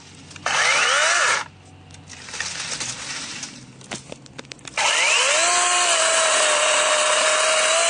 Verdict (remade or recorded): recorded